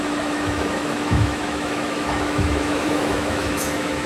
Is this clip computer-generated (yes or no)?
yes